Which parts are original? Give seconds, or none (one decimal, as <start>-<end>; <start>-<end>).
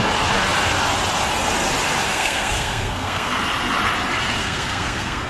0.0-2.1; 3.4-4.4